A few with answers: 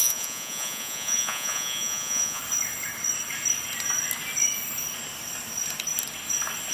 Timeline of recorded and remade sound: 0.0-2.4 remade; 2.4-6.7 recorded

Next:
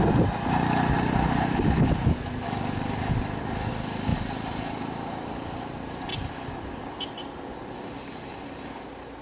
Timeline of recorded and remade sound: 0.0-9.2 recorded

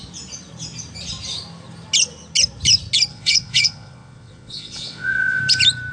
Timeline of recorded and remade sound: 0.0-3.1 recorded; 3.1-5.4 remade; 5.4-5.9 recorded

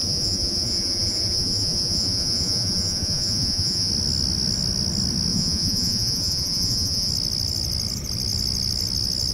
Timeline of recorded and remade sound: 0.0-3.9 remade; 3.9-5.3 recorded; 5.3-7.1 remade; 7.1-9.3 recorded

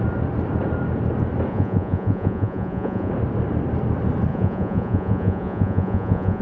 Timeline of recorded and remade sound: 0.0-1.5 recorded; 1.5-3.1 remade; 3.1-4.3 recorded; 4.3-6.4 remade